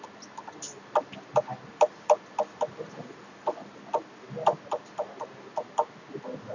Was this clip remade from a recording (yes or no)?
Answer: no